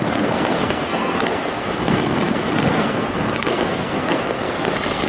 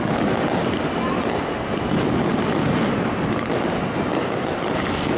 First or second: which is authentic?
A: second